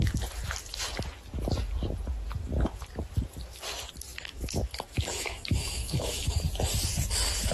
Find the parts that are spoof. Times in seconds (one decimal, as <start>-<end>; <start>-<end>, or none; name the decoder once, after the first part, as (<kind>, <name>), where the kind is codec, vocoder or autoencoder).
4.1-6.4 (autoencoder, DAC-VAE)